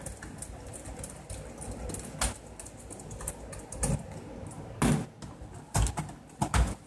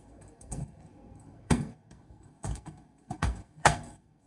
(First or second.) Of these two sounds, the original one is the first